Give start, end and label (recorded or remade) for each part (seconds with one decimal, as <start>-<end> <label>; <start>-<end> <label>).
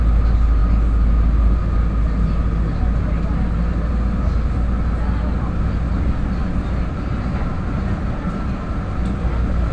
0.0-9.7 recorded